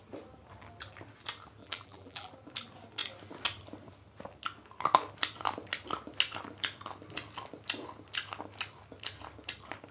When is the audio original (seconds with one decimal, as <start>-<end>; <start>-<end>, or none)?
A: 0.0-1.6; 2.3-9.9